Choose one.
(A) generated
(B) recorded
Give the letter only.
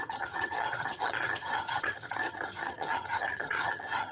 A